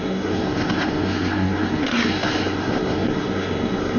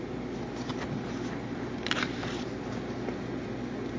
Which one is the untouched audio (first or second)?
second